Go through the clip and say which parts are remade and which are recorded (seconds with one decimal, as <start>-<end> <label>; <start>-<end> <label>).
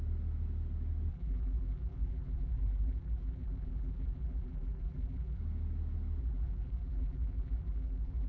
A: 0.0-1.1 recorded; 1.1-5.4 remade; 5.4-6.2 recorded; 6.2-8.3 remade